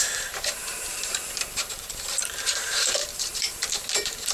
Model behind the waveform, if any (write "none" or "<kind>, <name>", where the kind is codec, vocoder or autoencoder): vocoder, BigVGAN v2